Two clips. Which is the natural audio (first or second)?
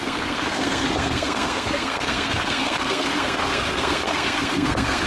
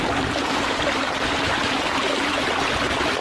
second